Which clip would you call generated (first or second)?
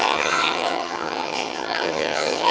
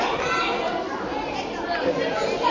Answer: first